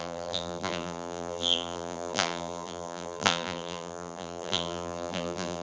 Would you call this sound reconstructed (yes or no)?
yes